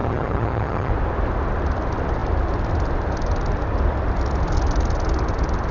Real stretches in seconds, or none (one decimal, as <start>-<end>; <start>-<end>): 0.9-5.7